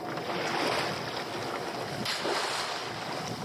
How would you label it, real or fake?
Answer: real